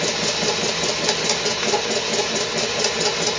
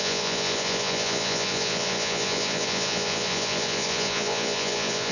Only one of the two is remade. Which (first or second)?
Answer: second